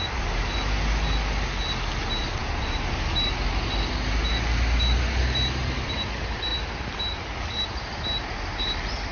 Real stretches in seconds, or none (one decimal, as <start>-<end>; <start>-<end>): 0.0-9.1